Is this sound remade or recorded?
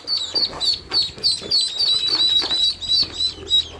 recorded